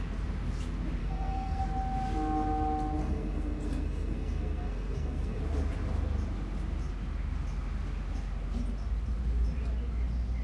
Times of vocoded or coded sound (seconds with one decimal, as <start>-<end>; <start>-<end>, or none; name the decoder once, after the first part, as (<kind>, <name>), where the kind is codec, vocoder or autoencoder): 1.0-1.6 (codec, SNAC); 3.0-5.4